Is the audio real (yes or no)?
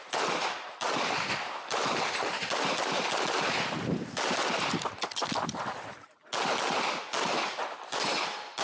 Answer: yes